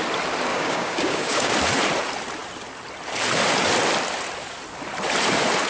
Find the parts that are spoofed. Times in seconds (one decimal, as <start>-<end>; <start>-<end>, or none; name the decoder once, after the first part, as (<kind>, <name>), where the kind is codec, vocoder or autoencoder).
0.5-1.5 (codec, DAC)